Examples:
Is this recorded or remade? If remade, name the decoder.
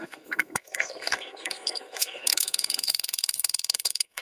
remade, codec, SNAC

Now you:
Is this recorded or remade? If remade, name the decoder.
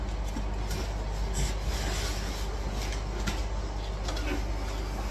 recorded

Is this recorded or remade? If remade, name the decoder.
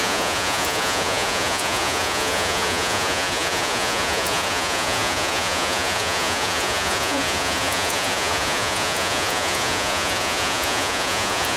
remade, vocoder, Vocos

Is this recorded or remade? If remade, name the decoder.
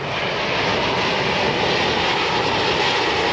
recorded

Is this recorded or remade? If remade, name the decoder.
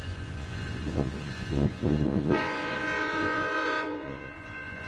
remade, vocoder, Vocos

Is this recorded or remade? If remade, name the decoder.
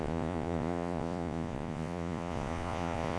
remade, vocoder, Vocos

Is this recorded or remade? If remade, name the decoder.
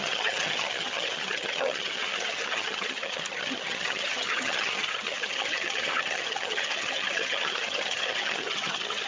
remade, vocoder, HiFi-GAN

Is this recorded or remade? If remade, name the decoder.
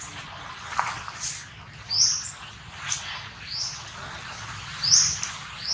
recorded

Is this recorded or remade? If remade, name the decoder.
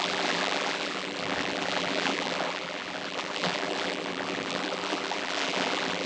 remade, vocoder, BigVGAN v2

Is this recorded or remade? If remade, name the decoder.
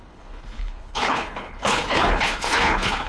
remade, codec, HILCodec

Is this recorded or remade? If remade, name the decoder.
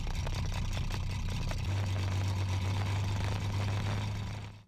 recorded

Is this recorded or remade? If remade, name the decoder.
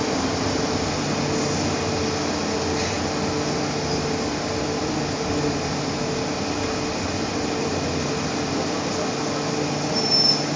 recorded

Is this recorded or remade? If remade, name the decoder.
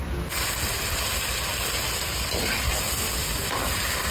recorded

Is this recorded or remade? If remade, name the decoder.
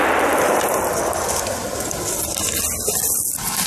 recorded